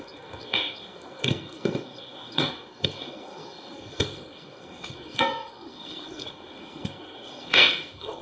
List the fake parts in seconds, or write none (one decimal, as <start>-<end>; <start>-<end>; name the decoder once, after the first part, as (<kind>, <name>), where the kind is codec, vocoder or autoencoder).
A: 0.0-8.2 (codec, SNAC)